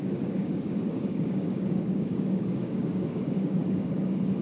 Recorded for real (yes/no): no